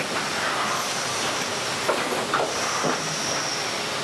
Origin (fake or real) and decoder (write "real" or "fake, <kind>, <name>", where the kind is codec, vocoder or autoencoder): real